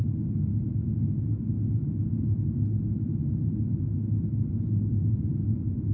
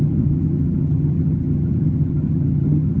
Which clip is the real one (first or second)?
first